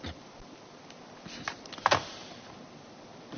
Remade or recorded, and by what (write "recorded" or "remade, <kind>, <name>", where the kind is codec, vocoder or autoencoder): recorded